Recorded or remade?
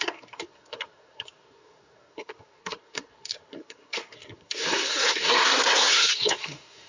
remade